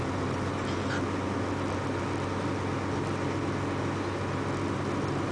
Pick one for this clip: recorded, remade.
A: recorded